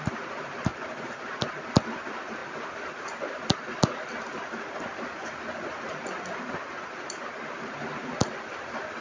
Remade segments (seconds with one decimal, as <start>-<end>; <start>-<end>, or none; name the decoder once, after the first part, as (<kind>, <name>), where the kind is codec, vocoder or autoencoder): none